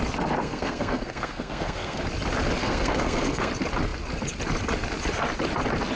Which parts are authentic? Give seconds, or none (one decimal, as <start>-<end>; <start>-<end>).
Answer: 0.0-0.4; 2.0-2.6; 3.5-6.0